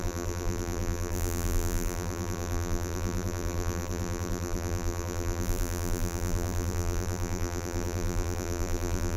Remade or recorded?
remade